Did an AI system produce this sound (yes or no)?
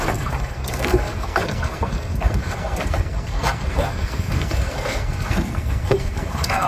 yes